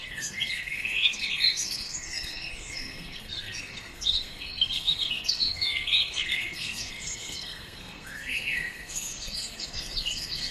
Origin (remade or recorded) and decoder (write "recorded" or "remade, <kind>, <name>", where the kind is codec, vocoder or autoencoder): remade, codec, SNAC